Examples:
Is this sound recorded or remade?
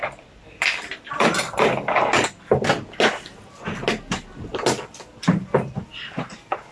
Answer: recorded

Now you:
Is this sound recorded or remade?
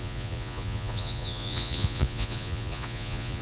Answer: remade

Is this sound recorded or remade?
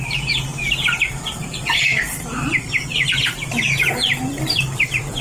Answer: remade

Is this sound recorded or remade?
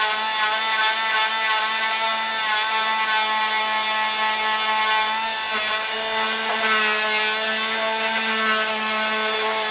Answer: recorded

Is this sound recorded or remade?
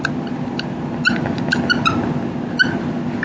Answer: recorded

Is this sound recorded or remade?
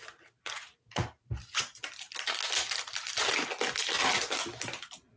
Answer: recorded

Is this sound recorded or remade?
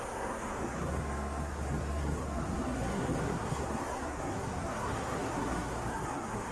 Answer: remade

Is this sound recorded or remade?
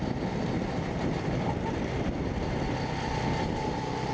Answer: recorded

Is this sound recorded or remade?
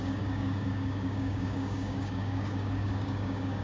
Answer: remade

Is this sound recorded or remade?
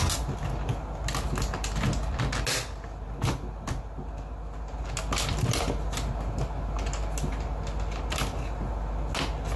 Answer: recorded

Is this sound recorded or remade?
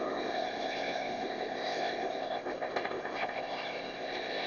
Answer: remade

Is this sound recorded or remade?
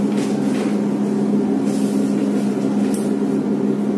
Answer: recorded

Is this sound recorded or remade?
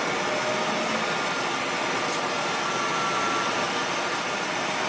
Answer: recorded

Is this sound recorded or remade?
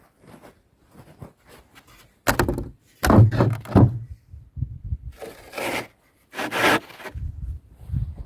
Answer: recorded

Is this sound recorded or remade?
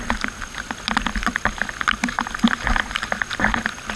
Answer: recorded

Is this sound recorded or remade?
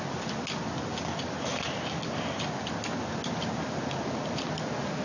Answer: recorded